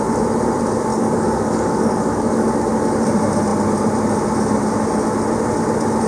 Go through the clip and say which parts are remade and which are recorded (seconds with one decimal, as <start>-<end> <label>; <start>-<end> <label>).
0.0-0.9 recorded; 0.9-2.5 remade; 2.5-6.1 recorded